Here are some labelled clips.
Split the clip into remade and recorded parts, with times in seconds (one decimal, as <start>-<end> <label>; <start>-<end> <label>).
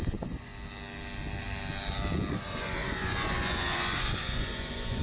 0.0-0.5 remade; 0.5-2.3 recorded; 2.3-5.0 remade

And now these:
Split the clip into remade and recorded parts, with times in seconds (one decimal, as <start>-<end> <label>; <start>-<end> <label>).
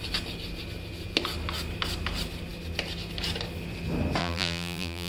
0.0-4.2 recorded; 4.2-5.1 remade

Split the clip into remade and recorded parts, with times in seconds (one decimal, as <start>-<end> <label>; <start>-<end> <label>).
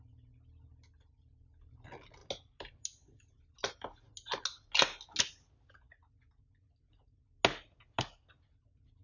0.0-9.0 recorded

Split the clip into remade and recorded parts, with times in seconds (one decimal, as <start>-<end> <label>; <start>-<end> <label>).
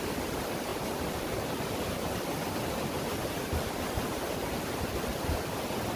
0.0-0.7 recorded; 0.7-2.2 remade; 2.2-3.2 recorded; 3.2-4.7 remade; 4.7-6.0 recorded